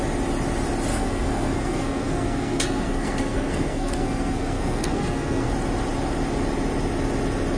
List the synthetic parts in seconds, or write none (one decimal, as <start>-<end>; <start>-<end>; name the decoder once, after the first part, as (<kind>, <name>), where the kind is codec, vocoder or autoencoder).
0.9-5.5 (codec, SNAC)